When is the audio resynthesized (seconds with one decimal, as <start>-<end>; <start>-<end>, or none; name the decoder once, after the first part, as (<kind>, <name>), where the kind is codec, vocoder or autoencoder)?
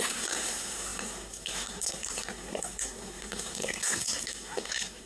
0.0-5.1 (codec, SNAC)